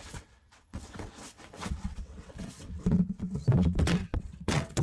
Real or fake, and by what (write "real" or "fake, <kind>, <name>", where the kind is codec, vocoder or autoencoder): fake, vocoder, WaveNeXt